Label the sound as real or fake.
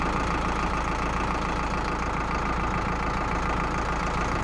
real